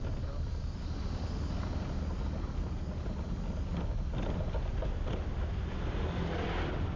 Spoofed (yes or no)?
no